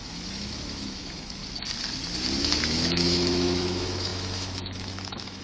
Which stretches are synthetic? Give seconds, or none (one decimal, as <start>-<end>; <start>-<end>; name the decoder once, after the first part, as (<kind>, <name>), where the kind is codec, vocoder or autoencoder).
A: 0.0-1.4 (autoencoder, DAC-VAE); 2.4-5.4